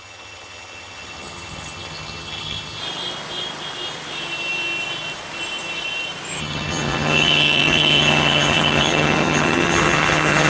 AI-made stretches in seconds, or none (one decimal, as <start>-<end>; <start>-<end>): 0.0-2.8; 6.4-10.5